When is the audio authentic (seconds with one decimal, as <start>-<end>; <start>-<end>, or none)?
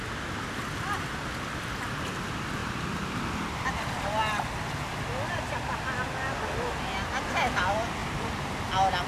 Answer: 0.0-2.6; 3.9-8.0; 8.7-9.1